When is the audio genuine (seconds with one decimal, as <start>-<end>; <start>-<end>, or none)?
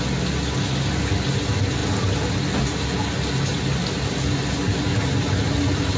0.0-6.0